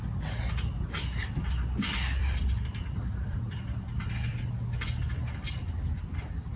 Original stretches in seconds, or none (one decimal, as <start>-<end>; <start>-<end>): 0.0-1.2; 3.4-4.3; 5.7-6.6